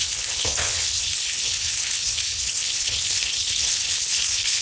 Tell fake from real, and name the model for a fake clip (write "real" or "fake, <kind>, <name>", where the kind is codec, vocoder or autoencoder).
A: fake, codec, HILCodec